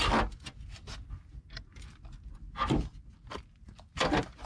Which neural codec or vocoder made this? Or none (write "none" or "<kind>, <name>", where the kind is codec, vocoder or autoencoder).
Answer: none